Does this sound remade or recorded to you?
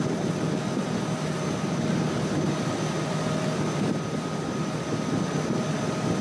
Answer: recorded